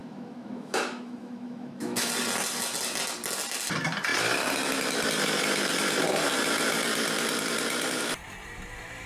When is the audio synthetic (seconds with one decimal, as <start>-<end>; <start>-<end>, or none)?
0.0-2.1